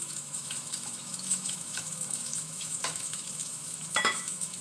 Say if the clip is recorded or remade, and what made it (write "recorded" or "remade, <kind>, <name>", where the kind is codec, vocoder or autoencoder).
remade, autoencoder, DAC-VAE